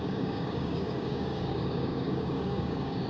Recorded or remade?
remade